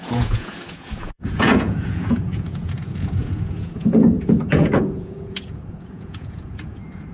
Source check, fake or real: fake